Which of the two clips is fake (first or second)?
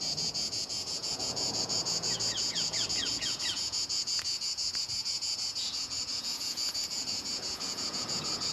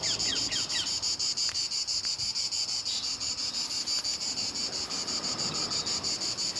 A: first